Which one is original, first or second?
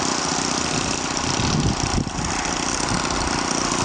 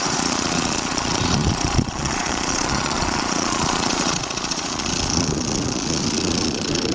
first